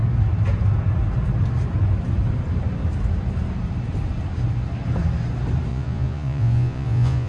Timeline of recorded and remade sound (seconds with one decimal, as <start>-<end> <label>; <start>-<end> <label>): 0.0-5.7 recorded; 5.7-7.3 remade